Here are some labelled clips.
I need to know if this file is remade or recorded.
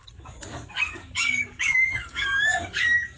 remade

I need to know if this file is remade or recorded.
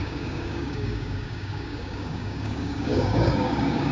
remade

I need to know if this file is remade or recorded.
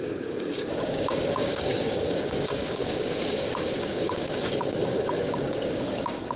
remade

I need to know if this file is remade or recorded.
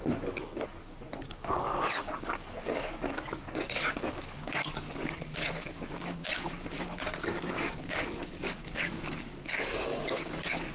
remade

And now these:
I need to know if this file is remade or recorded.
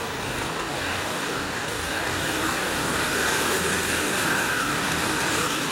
remade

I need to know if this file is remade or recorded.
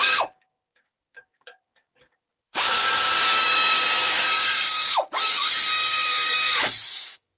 remade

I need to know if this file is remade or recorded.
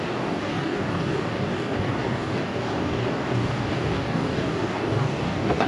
remade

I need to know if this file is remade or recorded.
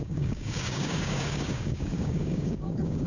remade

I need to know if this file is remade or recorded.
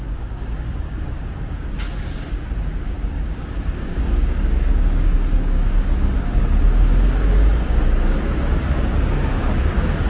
remade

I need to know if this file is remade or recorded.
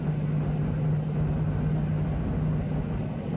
recorded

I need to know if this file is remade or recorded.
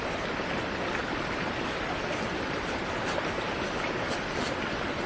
recorded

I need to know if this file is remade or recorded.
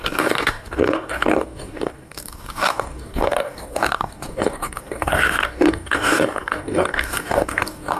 remade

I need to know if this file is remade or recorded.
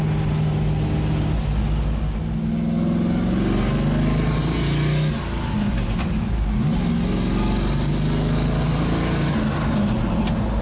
recorded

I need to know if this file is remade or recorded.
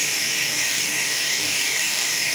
remade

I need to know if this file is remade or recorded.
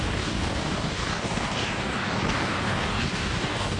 remade